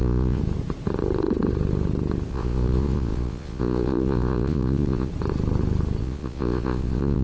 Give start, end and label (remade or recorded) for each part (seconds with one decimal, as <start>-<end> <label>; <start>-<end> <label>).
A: 0.0-0.4 remade; 0.4-2.3 recorded; 2.3-5.1 remade; 5.1-6.0 recorded; 6.0-7.2 remade